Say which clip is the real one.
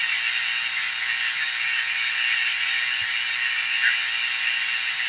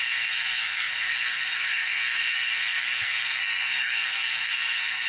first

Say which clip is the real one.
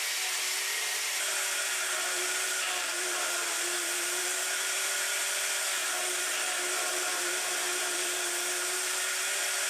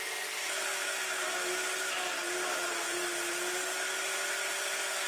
second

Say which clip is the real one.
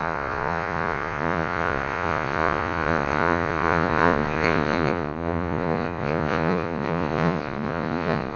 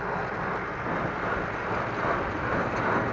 second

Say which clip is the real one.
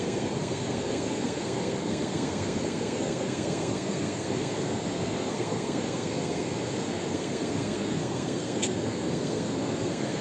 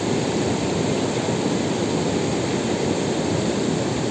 second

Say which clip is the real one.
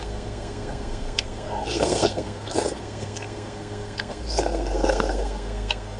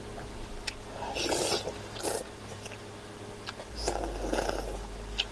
second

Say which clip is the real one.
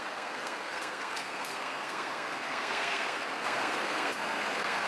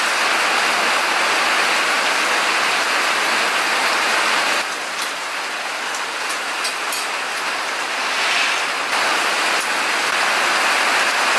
second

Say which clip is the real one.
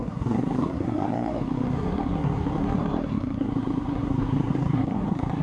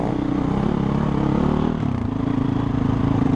second